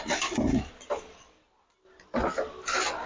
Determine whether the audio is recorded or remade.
recorded